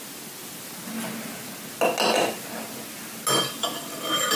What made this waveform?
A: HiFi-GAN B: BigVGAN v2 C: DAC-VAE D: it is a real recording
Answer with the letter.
D